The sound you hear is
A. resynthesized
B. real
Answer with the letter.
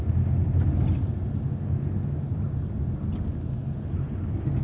B